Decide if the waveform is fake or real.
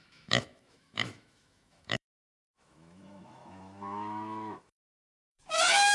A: fake